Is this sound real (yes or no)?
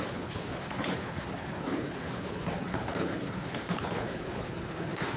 no